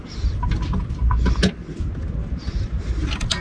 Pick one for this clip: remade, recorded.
recorded